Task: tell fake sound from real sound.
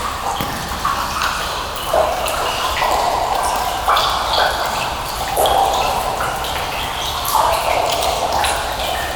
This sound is real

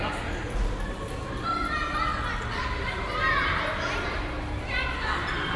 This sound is real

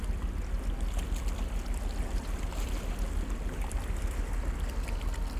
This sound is real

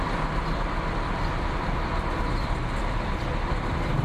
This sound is real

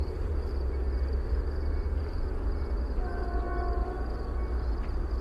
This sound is real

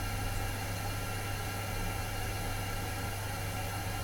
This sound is real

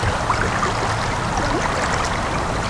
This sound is real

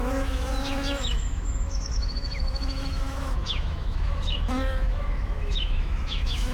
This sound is fake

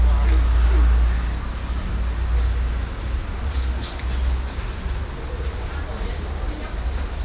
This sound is real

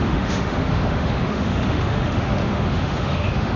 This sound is fake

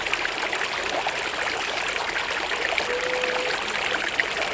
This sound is real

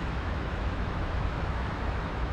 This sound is fake